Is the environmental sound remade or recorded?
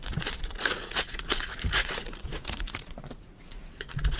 remade